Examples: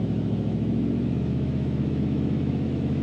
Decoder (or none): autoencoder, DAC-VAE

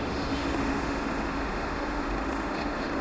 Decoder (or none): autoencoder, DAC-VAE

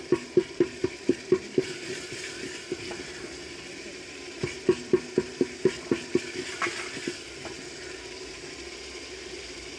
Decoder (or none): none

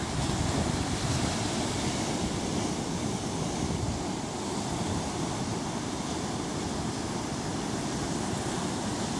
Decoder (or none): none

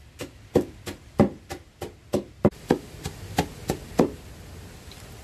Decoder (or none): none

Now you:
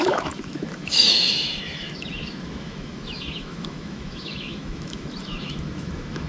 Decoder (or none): autoencoder, DAC-VAE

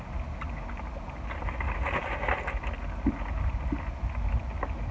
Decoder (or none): none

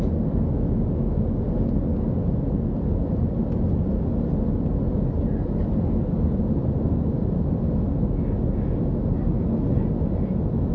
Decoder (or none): none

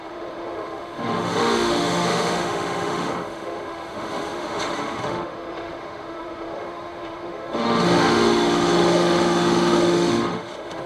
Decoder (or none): autoencoder, DAC-VAE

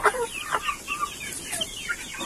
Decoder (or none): none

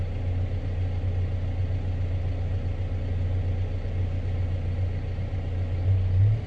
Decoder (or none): none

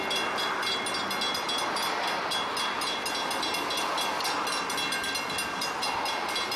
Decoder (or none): none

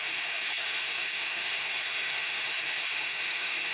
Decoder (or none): autoencoder, DAC-VAE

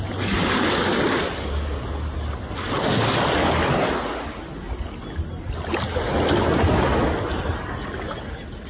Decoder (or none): none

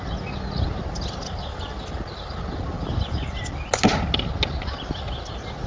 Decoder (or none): none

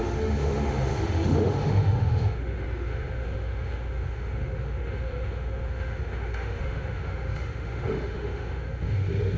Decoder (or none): autoencoder, DAC-VAE